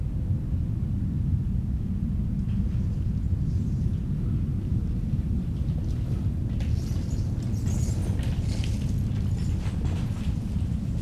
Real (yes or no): yes